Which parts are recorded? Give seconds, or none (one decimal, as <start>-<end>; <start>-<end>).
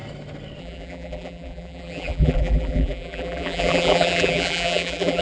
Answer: 0.0-0.6